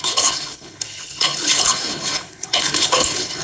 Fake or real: fake